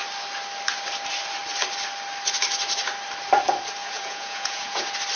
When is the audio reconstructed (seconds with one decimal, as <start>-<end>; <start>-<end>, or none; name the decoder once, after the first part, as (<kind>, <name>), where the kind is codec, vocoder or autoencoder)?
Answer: 3.8-4.8 (vocoder, Vocos)